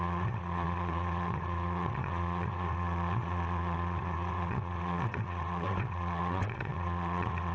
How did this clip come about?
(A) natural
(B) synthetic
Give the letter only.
B